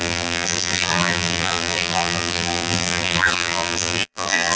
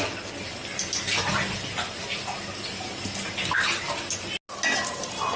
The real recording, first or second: second